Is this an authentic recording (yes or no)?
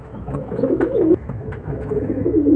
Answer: no